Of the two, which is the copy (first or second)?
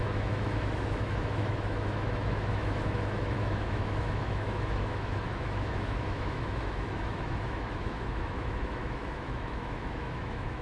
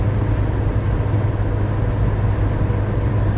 first